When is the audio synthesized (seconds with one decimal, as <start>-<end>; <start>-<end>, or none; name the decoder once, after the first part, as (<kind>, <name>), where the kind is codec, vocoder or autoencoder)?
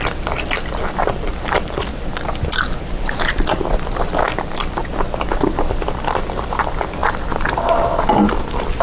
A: 0.0-4.8 (vocoder, BigVGAN v2); 5.3-8.8